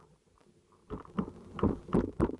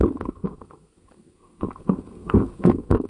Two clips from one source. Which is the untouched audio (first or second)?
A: first